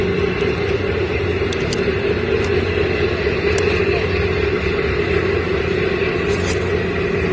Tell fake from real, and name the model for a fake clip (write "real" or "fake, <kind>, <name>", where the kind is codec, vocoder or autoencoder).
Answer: real